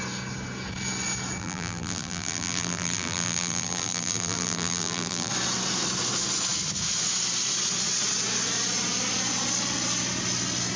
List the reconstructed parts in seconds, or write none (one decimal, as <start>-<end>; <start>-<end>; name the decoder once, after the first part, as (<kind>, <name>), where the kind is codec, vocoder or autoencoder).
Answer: 1.4-5.3 (vocoder, BigVGAN v2)